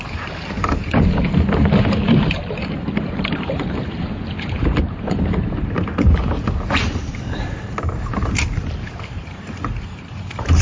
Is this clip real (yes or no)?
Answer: no